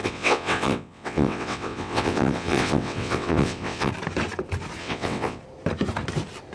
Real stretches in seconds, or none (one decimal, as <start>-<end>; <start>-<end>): 3.9-4.8; 5.4-6.5